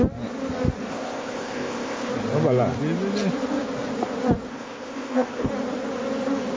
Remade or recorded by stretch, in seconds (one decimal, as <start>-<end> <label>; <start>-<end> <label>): 0.0-0.9 recorded; 0.9-2.1 remade; 2.1-4.5 recorded; 4.5-5.5 remade; 5.5-6.6 recorded